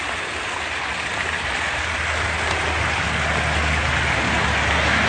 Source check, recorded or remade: recorded